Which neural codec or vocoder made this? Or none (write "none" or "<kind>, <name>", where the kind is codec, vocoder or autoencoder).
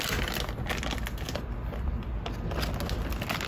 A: none